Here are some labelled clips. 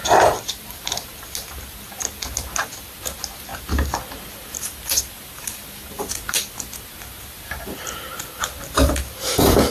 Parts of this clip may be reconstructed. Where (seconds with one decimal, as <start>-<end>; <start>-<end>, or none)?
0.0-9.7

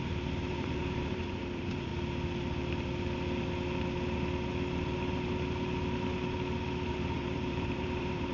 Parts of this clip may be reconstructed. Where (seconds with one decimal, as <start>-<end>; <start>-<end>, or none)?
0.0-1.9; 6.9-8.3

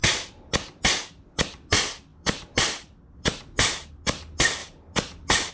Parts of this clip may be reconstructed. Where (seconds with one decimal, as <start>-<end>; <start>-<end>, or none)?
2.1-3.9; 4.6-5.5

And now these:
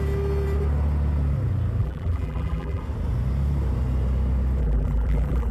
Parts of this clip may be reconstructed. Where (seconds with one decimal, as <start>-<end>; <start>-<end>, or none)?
1.8-2.8; 4.6-5.5

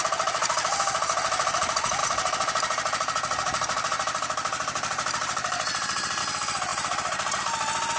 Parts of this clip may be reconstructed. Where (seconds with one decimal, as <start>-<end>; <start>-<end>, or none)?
2.0-6.2; 6.7-7.4

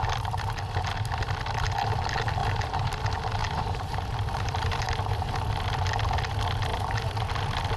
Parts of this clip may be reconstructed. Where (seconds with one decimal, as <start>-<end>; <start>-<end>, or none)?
2.4-3.0; 3.4-5.3; 6.7-7.3